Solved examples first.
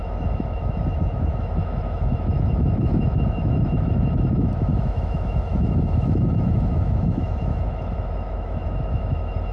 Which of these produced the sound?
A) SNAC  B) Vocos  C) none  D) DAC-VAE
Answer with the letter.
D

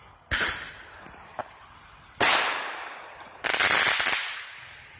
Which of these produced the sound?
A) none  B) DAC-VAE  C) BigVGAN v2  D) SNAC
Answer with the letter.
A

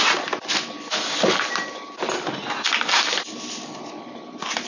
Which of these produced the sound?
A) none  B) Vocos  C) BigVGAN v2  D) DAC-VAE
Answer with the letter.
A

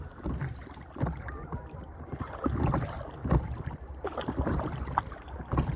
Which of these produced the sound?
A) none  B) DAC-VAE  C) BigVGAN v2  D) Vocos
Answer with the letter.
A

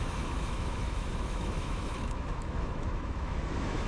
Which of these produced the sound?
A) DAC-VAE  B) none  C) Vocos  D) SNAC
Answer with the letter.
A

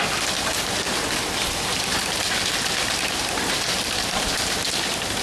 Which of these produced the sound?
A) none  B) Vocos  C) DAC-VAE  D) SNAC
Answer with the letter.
A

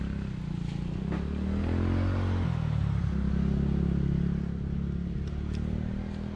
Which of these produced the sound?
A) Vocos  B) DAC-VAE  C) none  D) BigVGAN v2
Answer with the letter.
C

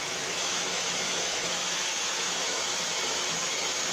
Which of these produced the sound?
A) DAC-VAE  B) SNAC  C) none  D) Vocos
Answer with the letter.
A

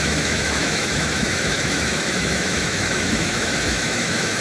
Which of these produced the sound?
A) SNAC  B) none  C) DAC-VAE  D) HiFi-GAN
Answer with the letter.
C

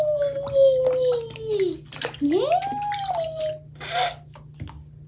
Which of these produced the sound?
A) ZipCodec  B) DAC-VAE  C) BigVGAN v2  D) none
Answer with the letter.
D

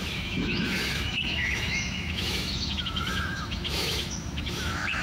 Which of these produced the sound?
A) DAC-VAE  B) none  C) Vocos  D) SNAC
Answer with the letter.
A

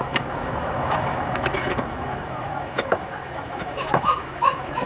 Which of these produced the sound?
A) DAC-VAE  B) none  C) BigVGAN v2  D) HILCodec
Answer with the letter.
A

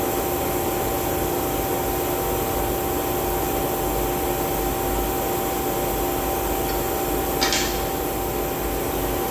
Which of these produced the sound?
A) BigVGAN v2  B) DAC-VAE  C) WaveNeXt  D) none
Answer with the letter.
D